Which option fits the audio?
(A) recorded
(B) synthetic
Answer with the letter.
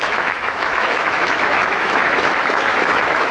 B